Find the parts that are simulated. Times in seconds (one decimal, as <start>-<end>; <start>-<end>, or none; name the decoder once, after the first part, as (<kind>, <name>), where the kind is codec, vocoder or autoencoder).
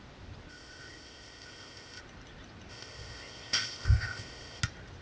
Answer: 0.5-2.0 (codec, ZipCodec); 2.7-4.6